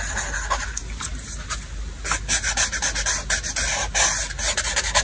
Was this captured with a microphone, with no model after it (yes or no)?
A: yes